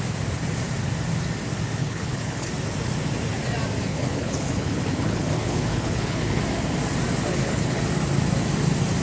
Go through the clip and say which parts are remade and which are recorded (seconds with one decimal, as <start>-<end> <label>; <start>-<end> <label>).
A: 0.0-1.8 recorded; 1.8-2.5 remade; 2.5-3.9 recorded; 3.9-6.4 remade; 6.4-7.3 recorded; 7.3-7.8 remade; 7.8-9.0 recorded